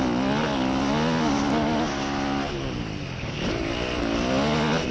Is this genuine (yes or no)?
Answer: yes